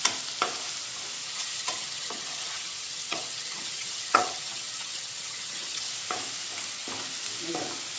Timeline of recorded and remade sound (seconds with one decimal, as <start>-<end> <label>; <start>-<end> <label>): 0.0-1.2 recorded; 1.2-5.9 remade; 5.9-8.0 recorded